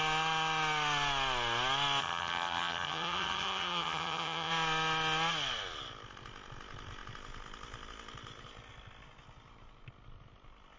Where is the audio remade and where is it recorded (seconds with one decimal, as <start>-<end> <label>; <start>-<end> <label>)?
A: 0.0-2.0 recorded; 2.0-4.5 remade; 4.5-10.8 recorded